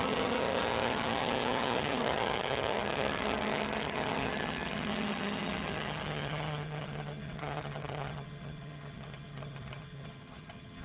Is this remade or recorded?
remade